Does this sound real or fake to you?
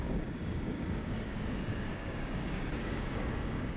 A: fake